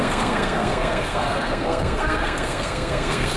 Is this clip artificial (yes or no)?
yes